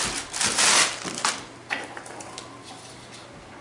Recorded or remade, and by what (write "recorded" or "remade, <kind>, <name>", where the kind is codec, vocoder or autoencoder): recorded